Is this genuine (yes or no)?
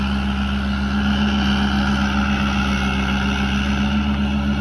yes